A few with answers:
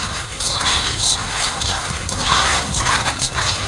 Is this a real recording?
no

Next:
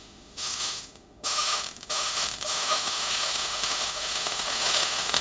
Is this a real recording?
no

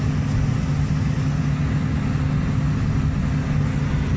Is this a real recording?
yes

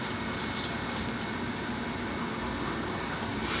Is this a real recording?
yes